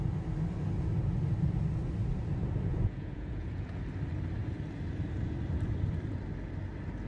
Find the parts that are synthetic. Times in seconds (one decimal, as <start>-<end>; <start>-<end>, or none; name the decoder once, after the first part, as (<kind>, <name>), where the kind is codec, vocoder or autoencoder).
2.7-3.8 (vocoder, Vocos)